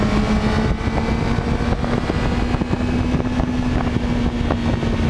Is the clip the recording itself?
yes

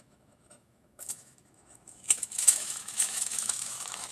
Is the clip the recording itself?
no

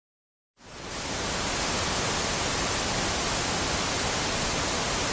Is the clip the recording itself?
yes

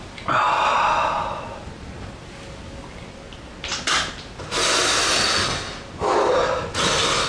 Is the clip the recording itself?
yes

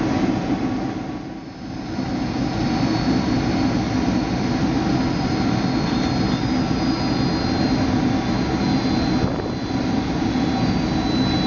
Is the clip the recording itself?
yes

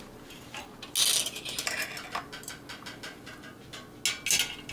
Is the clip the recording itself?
yes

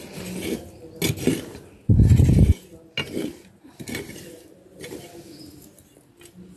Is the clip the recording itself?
yes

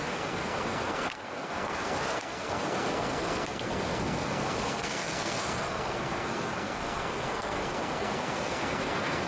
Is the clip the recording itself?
no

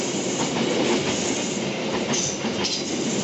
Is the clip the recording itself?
yes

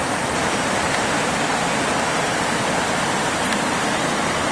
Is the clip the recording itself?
yes